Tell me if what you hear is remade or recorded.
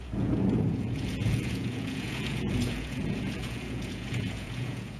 remade